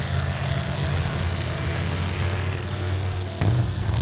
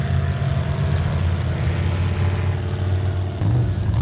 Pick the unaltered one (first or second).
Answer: second